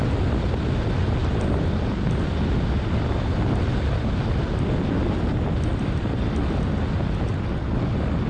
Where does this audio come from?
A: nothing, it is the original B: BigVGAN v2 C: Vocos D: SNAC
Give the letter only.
A